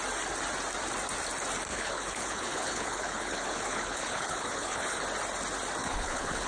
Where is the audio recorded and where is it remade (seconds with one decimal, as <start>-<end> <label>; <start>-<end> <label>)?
0.0-1.7 recorded; 1.7-5.0 remade; 5.0-5.8 recorded; 5.8-6.5 remade